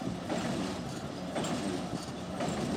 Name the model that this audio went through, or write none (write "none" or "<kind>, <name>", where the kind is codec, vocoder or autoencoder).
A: vocoder, BigVGAN v2